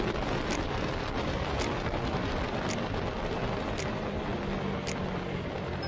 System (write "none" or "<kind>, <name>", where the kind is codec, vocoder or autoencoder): none